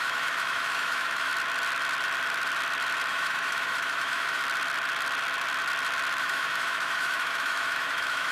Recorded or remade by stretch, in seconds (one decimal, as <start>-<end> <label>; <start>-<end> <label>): 0.0-1.3 remade; 1.3-3.1 recorded; 3.1-4.4 remade; 4.4-6.2 recorded; 6.2-8.3 remade